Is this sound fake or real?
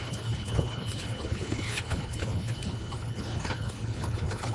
fake